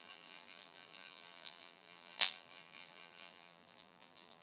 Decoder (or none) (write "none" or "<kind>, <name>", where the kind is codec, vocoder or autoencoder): vocoder, BigVGAN v2